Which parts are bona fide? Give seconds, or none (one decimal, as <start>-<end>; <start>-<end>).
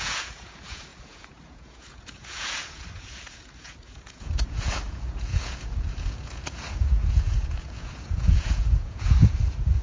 none